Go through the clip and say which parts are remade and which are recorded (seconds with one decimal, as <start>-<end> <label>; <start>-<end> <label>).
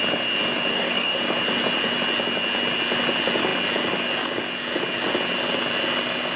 0.0-0.7 recorded; 0.7-1.2 remade; 1.2-6.4 recorded